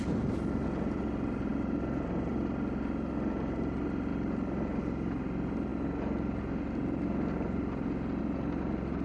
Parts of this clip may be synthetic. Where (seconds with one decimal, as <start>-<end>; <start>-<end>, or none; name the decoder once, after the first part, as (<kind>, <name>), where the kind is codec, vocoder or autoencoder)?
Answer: none

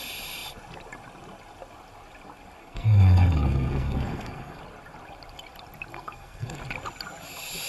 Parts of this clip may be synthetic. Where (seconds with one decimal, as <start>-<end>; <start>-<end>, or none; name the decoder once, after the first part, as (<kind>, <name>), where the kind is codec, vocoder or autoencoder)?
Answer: 2.6-4.6 (codec, SNAC); 5.9-6.6

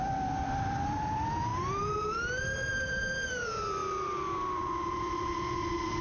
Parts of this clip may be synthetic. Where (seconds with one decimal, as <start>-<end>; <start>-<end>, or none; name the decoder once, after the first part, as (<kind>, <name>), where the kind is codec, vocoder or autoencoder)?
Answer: 0.0-1.5 (vocoder, BigVGAN v2); 2.8-6.0

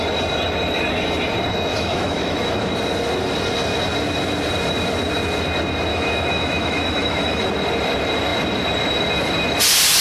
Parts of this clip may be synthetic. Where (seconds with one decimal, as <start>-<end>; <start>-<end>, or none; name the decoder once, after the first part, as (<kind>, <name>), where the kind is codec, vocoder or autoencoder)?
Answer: 1.7-2.7 (autoencoder, DAC-VAE); 5.9-7.4

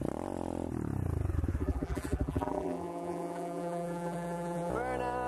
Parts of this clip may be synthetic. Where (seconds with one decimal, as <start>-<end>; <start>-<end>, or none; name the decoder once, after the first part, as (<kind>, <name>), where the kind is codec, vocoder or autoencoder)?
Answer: 1.6-4.7 (vocoder, BigVGAN v2)

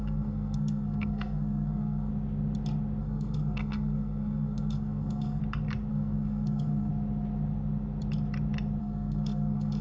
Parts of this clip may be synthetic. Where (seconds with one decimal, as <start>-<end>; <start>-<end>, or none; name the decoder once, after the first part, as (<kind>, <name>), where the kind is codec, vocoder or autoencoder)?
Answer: 0.0-2.1 (codec, SNAC); 3.0-5.4; 5.9-6.9; 8.8-9.8

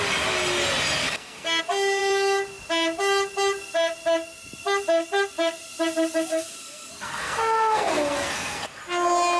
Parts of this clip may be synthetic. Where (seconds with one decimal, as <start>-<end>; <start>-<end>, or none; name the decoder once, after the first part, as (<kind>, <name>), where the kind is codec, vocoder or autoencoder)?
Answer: 1.0-1.6 (codec, SNAC); 6.3-8.8

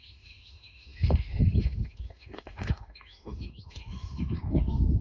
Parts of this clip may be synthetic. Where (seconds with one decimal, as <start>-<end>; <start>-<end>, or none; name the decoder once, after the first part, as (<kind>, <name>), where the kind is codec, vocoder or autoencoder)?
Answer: 0.0-5.0 (autoencoder, DAC-VAE)